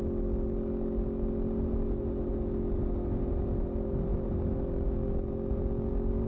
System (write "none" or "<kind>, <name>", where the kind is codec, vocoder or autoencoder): none